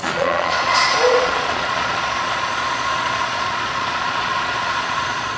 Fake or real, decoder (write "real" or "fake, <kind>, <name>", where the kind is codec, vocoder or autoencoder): fake, vocoder, Vocos